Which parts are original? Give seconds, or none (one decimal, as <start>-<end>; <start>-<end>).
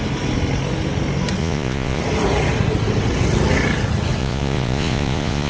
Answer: 0.0-1.4; 2.0-4.2